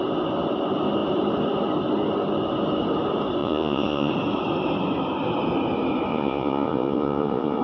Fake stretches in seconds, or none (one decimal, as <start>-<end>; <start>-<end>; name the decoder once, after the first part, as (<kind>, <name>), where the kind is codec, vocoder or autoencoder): 3.4-4.1 (vocoder, Vocos); 6.1-7.6